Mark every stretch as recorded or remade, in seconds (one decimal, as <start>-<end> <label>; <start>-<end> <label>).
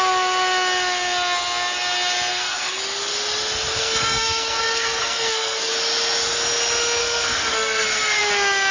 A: 0.0-2.3 recorded; 2.3-2.8 remade; 2.8-3.8 recorded; 3.8-5.7 remade; 5.7-7.0 recorded; 7.0-8.2 remade; 8.2-8.7 recorded